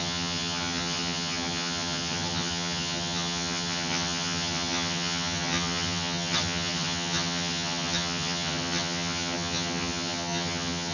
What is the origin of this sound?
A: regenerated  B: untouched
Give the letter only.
A